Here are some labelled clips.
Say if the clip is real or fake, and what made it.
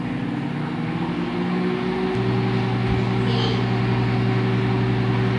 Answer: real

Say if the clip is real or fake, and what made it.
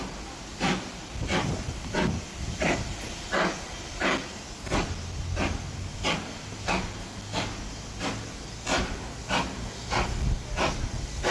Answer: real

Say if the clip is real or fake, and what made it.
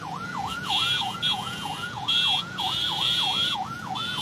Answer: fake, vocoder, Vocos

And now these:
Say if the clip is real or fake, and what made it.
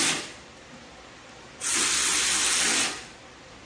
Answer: real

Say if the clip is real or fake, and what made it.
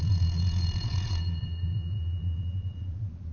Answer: fake, vocoder, Vocos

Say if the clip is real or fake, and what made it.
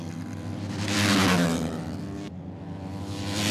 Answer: real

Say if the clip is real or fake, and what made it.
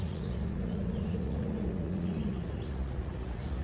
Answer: fake, vocoder, Vocos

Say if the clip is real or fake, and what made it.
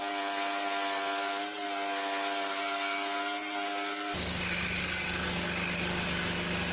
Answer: real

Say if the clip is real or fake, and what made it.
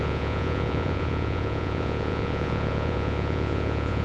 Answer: fake, vocoder, Vocos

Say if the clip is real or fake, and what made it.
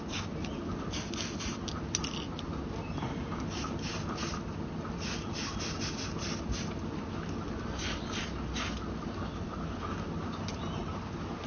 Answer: real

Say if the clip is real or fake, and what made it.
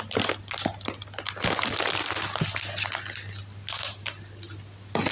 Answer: real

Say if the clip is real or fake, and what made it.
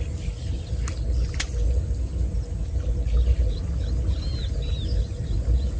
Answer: real